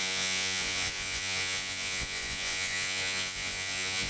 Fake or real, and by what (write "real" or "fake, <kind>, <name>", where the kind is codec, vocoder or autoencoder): fake, vocoder, Vocos